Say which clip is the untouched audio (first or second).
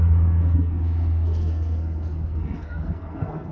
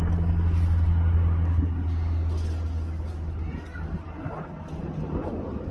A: second